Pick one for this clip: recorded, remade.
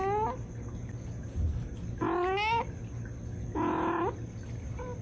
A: recorded